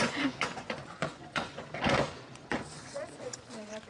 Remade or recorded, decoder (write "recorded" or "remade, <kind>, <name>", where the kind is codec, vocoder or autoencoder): remade, vocoder, Vocos